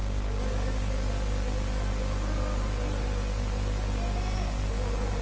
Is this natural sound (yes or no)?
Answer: yes